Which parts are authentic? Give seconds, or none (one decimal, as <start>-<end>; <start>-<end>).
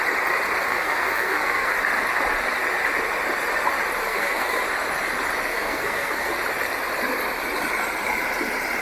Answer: 0.0-0.7; 1.7-4.0; 4.6-5.5; 6.3-8.8